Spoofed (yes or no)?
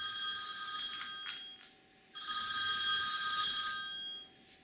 no